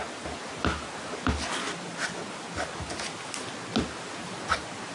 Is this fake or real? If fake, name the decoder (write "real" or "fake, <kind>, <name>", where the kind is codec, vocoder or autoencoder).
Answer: real